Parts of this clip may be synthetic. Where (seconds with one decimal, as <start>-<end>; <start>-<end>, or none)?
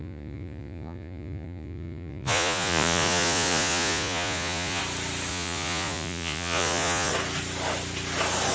0.0-4.8; 5.3-7.1